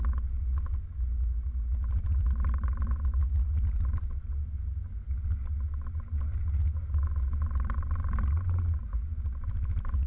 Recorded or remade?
recorded